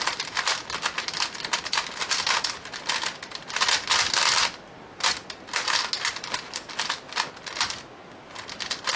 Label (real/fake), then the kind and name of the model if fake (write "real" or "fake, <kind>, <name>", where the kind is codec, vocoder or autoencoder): real